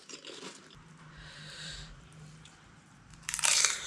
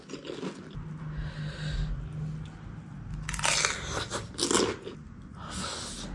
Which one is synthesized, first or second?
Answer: first